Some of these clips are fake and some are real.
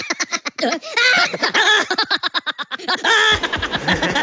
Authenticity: real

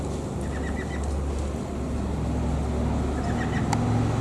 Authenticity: real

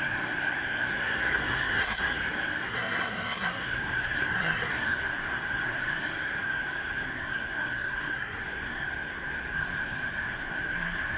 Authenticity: fake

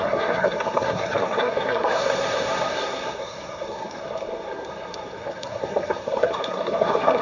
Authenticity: fake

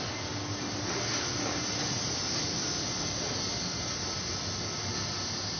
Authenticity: real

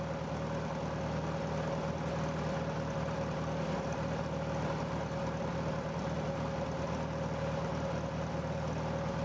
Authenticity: real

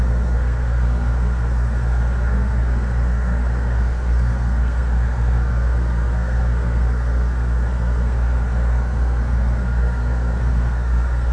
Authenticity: fake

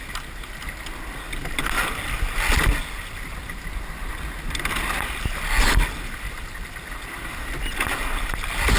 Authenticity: real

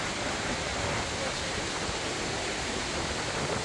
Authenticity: real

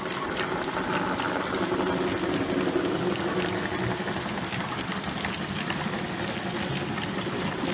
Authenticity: real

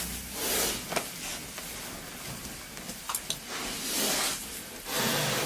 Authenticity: real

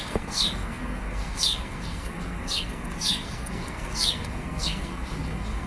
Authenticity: fake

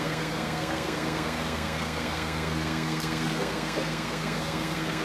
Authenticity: fake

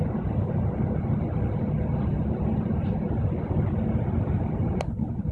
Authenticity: real